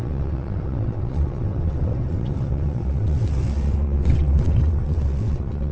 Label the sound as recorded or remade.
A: remade